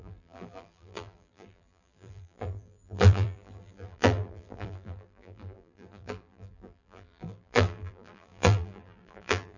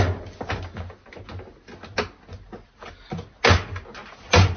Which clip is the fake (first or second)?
first